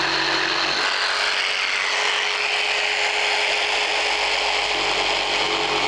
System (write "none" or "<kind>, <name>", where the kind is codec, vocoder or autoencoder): none